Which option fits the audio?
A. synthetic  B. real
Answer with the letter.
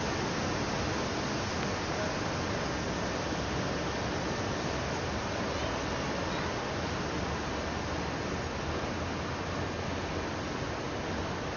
B